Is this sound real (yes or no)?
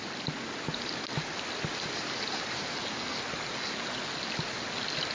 yes